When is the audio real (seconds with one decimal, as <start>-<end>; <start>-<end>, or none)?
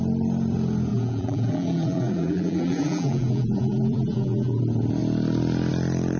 0.0-0.9; 4.6-6.2